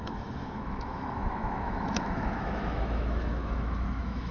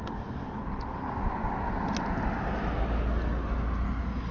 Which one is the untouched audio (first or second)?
second